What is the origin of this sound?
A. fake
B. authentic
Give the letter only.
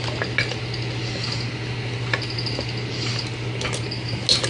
B